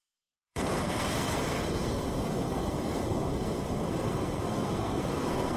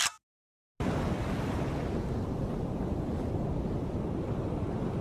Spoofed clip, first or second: first